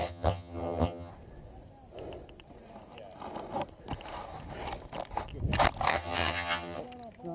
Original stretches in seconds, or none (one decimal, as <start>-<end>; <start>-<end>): 1.1-5.9; 6.8-7.3